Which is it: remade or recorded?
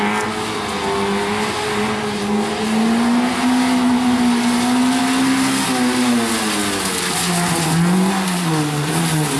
recorded